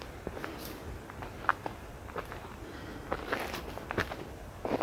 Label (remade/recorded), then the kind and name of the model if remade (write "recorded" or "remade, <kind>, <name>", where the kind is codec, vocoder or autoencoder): recorded